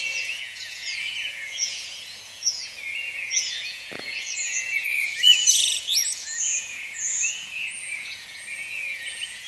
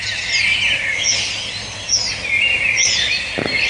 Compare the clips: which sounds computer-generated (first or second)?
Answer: first